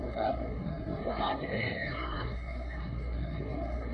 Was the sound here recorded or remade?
remade